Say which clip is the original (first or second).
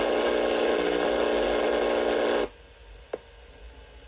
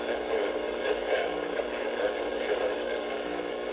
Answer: first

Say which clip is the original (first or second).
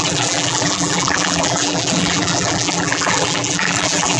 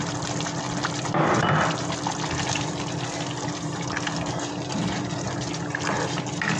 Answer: second